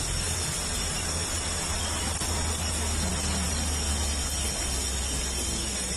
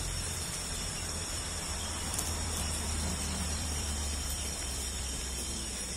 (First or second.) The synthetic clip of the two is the second